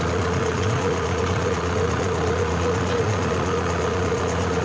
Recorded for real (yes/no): no